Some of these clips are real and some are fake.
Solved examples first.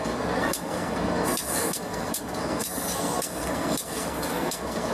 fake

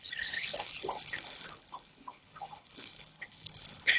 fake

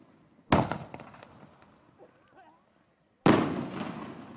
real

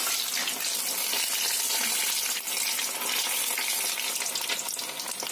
real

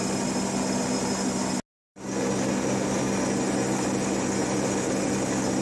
real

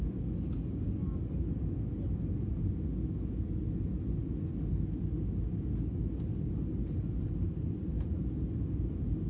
real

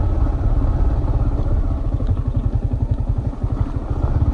real